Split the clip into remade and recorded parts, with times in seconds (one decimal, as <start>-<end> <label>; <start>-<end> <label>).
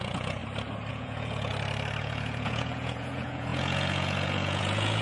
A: 0.0-0.4 remade; 0.4-0.9 recorded; 0.9-1.5 remade; 1.5-2.0 recorded; 2.0-5.0 remade